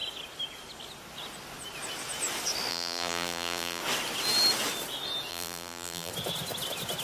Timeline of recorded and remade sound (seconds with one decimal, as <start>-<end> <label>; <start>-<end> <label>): 0.0-2.7 recorded; 2.7-3.8 remade; 3.8-5.3 recorded; 5.3-6.1 remade; 6.1-7.0 recorded